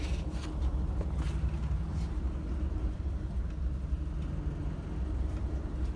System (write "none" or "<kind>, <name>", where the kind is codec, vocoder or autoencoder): none